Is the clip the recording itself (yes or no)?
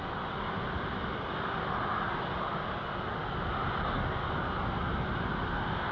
yes